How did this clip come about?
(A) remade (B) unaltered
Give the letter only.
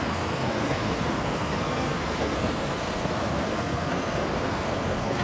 A